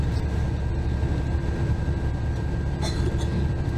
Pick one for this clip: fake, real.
real